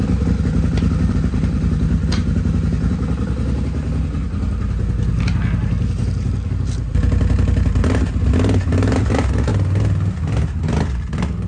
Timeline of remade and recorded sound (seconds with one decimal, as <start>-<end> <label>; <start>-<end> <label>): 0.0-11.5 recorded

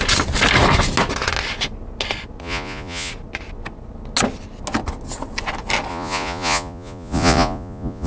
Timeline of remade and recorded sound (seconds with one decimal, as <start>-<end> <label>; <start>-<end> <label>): 0.0-2.4 recorded; 2.4-3.1 remade; 3.1-5.9 recorded; 5.9-8.1 remade

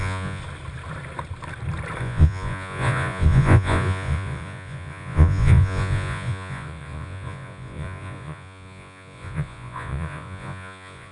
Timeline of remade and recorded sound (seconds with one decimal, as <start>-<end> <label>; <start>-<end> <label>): 0.0-0.4 remade; 0.4-2.0 recorded; 2.0-11.1 remade